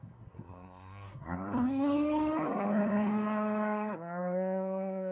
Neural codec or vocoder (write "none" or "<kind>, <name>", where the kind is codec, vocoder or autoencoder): codec, SNAC